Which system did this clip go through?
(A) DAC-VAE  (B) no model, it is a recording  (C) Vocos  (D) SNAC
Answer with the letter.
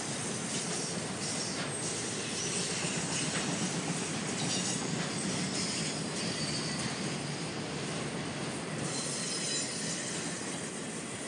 B